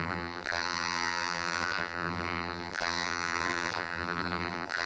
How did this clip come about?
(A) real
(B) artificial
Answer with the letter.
B